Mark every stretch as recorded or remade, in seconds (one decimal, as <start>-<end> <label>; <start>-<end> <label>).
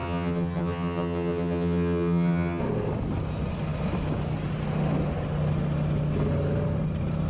0.0-2.6 remade; 2.6-7.3 recorded